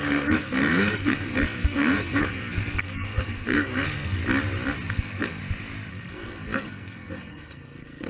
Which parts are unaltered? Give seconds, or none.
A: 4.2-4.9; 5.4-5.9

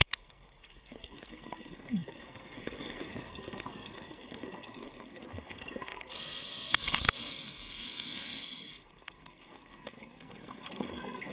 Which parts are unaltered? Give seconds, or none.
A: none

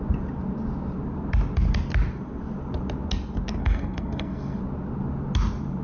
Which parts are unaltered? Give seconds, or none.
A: 0.0-3.6; 4.6-5.8